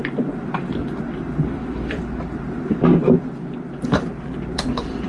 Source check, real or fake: fake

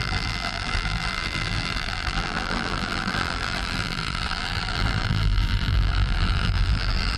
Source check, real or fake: fake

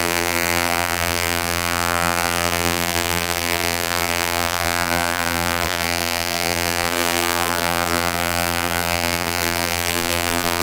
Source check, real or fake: fake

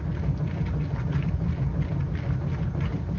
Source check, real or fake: real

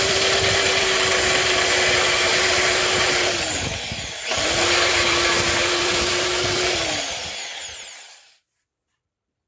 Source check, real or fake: fake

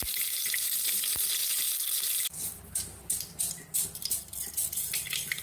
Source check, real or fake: real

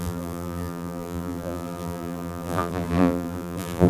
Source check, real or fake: fake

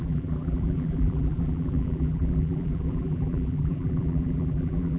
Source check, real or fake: fake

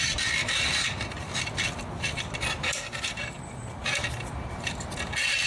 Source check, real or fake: fake